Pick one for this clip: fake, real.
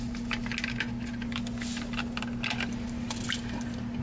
real